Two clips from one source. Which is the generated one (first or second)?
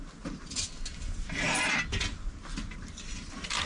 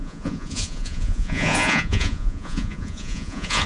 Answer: second